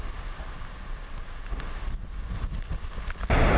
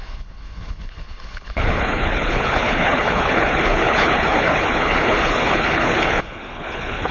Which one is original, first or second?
first